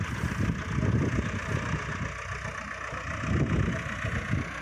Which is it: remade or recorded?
recorded